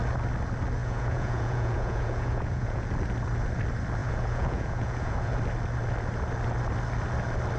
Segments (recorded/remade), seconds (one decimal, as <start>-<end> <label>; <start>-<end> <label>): 0.0-0.8 recorded; 0.8-2.9 remade; 2.9-4.0 recorded; 4.0-5.3 remade; 5.3-7.6 recorded